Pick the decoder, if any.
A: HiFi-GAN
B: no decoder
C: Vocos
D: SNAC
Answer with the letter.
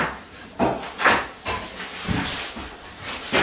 B